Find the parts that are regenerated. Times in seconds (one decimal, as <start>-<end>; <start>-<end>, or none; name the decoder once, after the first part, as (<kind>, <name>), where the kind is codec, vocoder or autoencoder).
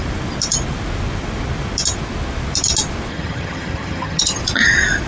3.1-4.4 (vocoder, HiFi-GAN)